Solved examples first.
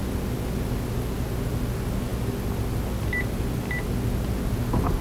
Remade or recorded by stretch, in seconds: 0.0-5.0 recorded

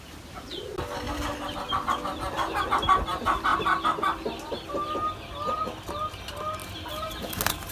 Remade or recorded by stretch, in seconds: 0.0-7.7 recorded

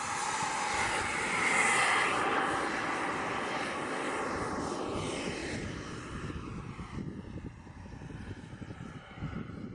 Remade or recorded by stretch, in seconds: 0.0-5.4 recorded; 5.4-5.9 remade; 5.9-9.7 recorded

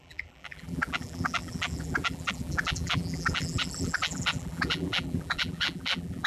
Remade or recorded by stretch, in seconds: 0.0-6.3 remade

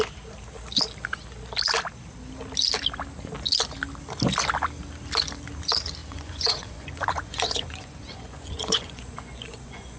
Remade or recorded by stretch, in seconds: 0.0-6.0 recorded; 6.0-10.0 remade